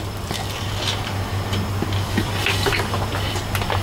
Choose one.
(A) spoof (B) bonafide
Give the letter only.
B